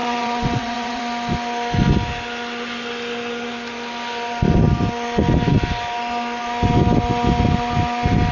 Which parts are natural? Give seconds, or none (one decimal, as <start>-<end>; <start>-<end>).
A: 1.0-8.3